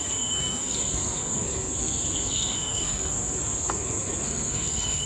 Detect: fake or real fake